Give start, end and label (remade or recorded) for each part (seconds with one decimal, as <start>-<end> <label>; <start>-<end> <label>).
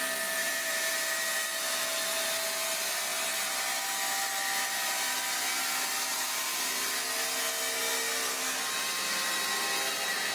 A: 0.0-0.4 recorded; 0.4-0.9 remade; 0.9-6.1 recorded; 6.1-6.7 remade; 6.7-10.3 recorded